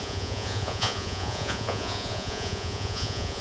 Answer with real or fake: fake